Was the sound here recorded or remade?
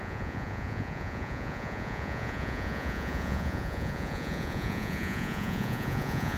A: remade